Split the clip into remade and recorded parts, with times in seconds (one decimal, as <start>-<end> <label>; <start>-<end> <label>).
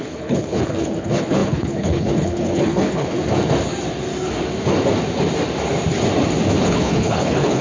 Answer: 0.0-3.2 remade; 3.2-6.6 recorded; 6.6-7.6 remade